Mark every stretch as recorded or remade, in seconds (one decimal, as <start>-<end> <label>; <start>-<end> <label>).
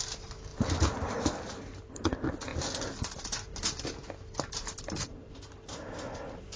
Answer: 0.0-6.6 recorded